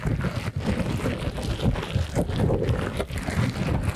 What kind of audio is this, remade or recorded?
recorded